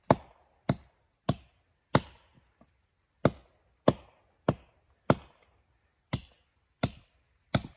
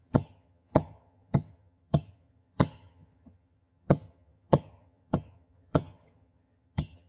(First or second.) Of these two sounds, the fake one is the second